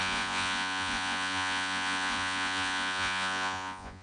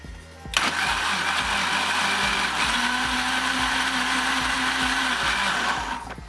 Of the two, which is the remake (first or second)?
first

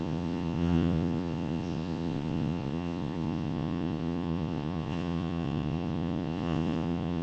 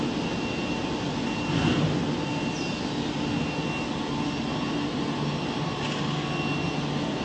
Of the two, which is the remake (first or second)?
first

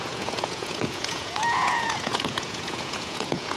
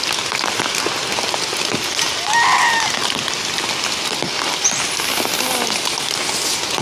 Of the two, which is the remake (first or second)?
first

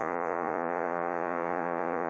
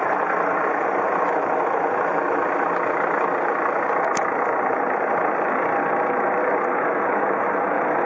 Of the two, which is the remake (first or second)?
first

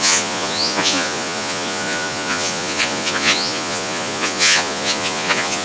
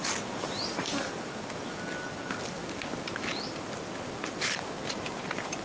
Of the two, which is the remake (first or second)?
first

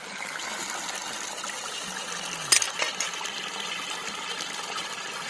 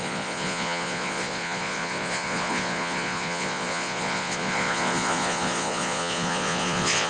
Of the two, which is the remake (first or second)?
second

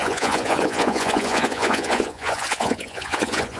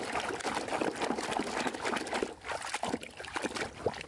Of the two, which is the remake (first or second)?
first